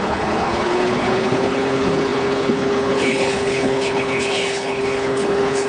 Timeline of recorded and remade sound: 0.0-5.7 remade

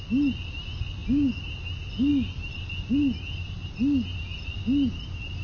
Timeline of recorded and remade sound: 0.0-5.4 recorded

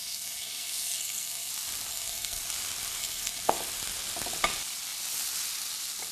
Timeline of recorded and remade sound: 0.0-1.5 remade; 1.5-1.9 recorded; 1.9-2.4 remade; 2.4-3.0 recorded; 3.0-3.5 remade; 3.5-6.1 recorded

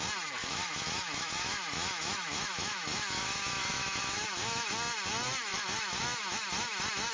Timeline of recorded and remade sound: 0.0-0.4 recorded; 0.4-4.7 remade; 4.7-5.5 recorded; 5.5-6.0 remade; 6.0-7.1 recorded

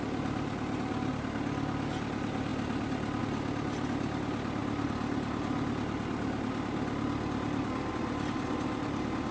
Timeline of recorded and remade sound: 0.0-9.3 recorded

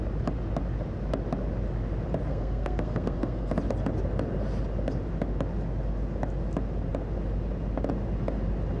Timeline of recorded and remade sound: 0.0-2.3 recorded; 2.3-3.5 remade; 3.5-8.8 recorded